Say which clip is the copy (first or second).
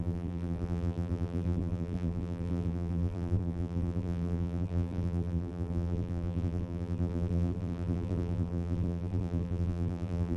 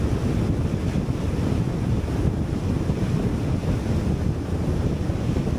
first